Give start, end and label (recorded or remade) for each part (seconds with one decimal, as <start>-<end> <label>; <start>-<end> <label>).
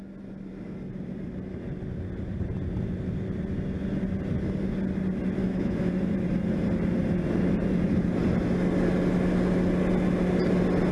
0.0-5.4 recorded; 5.4-5.9 remade; 5.9-10.9 recorded